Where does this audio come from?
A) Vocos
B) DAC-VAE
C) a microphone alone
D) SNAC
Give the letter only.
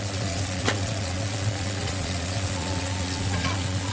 A